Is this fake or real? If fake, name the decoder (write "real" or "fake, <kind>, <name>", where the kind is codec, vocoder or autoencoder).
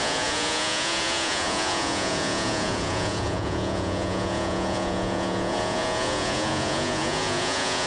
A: fake, vocoder, Vocos